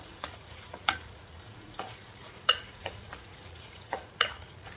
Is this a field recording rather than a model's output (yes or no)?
no